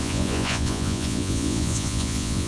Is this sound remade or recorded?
remade